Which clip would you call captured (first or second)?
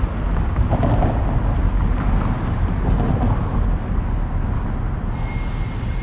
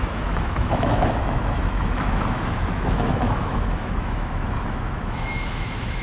first